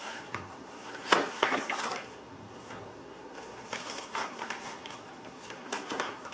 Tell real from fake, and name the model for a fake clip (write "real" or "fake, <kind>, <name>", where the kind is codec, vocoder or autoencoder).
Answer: fake, codec, SNAC